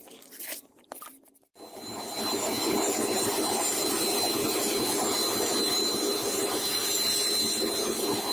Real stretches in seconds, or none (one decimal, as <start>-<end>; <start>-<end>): 0.0-8.3